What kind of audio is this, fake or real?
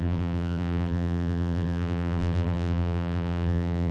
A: fake